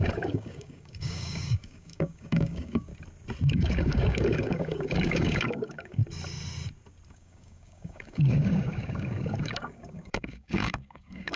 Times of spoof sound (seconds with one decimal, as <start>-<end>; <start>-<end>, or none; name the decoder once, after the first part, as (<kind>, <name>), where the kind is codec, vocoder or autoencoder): 0.0-2.9 (codec, DAC); 3.5-6.0; 7.1-11.4